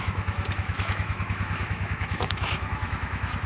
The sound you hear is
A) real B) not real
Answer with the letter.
B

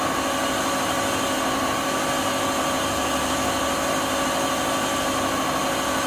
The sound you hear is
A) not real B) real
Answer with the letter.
B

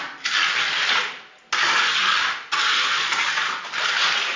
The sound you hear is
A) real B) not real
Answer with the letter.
A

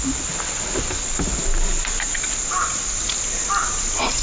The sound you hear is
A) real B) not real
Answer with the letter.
A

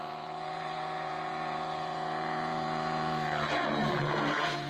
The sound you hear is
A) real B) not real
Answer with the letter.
B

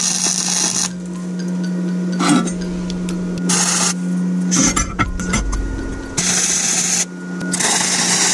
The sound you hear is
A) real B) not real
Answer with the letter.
A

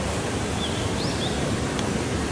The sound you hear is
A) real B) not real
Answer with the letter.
A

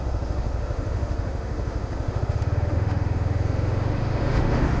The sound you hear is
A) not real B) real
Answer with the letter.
A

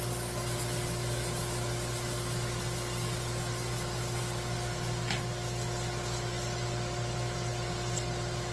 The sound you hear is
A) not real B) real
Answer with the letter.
B